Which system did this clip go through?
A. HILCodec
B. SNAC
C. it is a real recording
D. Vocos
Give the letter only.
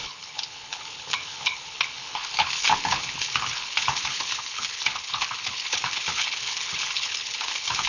A